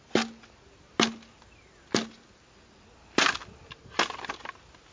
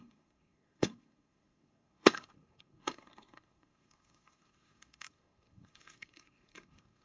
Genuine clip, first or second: first